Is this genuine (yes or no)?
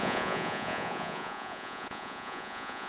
no